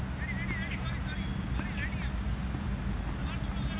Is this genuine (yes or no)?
yes